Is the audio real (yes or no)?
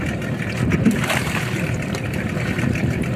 no